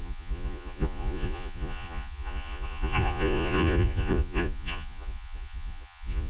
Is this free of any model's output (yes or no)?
no